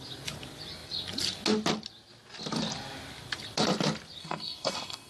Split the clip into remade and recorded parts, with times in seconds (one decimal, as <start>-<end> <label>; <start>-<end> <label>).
0.0-4.2 recorded; 4.2-5.1 remade